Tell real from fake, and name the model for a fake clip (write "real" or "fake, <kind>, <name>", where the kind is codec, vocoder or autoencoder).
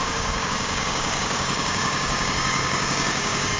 fake, codec, DAC